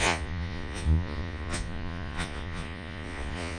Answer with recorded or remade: remade